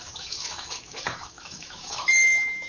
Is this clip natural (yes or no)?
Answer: no